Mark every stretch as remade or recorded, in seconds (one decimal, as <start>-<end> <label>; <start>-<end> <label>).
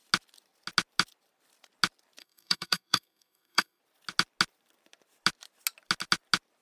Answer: 0.0-2.2 recorded; 2.2-3.8 remade; 3.8-6.6 recorded